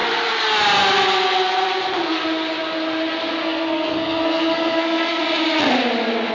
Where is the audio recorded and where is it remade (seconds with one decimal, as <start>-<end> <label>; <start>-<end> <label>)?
0.0-3.4 recorded; 3.4-5.2 remade; 5.2-6.3 recorded